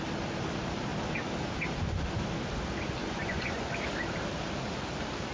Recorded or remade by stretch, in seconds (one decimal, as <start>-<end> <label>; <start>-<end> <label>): 0.0-3.0 recorded; 3.0-3.7 remade; 3.7-5.3 recorded